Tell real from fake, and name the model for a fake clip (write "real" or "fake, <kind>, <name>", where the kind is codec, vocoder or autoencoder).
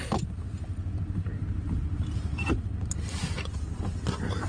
real